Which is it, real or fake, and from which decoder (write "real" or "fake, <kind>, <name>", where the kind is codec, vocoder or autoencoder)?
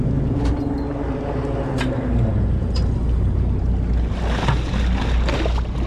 real